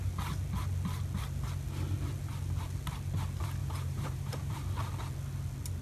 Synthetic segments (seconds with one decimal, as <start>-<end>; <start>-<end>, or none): 3.6-4.5